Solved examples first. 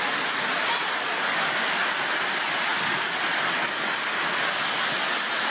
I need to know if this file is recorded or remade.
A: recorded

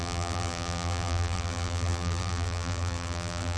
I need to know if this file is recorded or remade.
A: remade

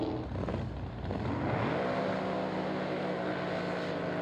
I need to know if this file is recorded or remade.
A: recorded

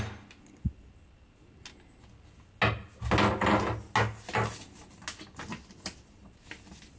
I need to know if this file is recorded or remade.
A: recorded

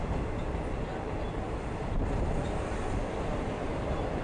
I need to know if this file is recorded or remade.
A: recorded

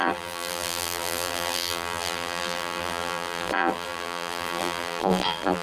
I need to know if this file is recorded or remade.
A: remade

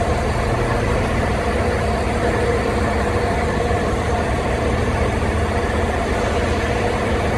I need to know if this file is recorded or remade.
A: recorded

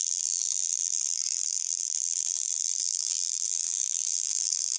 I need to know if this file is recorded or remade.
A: remade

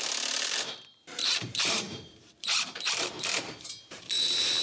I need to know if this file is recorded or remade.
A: remade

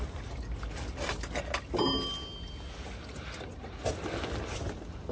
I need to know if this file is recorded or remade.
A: recorded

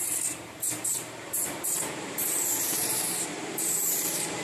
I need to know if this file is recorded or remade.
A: remade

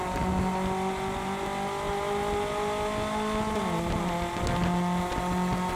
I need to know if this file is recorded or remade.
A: recorded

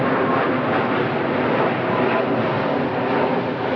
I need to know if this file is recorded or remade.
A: recorded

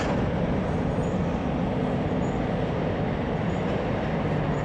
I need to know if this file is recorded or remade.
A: recorded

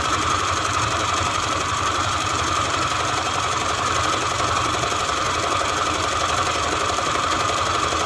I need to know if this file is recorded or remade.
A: remade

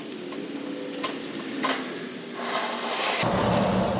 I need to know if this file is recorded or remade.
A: recorded